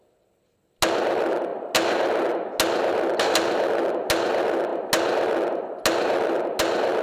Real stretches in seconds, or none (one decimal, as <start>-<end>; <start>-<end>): 0.0-7.0